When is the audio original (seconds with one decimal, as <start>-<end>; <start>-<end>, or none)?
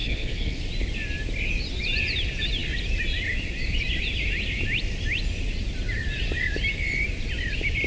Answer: 0.6-7.9